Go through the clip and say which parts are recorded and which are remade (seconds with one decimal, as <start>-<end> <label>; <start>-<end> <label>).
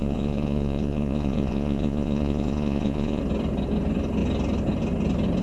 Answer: 0.0-3.2 remade; 3.2-5.4 recorded